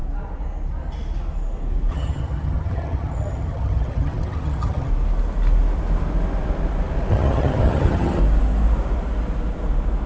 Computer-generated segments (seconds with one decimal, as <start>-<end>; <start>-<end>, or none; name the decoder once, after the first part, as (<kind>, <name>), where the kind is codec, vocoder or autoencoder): 1.9-4.9 (vocoder, HiFi-GAN); 7.1-8.2